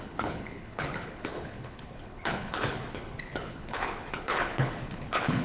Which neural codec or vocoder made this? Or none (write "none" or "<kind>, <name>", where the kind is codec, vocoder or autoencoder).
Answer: codec, HILCodec